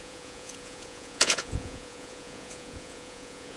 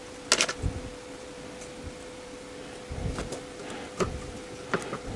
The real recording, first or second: second